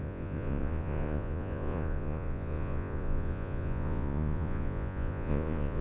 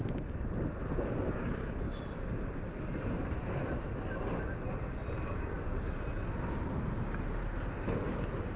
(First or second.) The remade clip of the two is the first